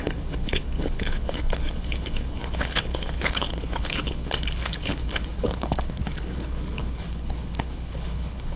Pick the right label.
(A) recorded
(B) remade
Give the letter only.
B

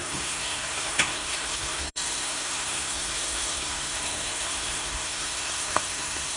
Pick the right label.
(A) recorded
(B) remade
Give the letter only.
B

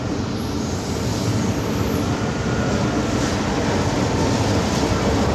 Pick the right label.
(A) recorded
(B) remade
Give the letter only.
A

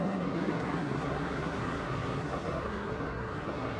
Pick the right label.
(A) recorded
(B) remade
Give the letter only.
B